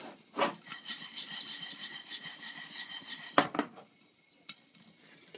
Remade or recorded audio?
remade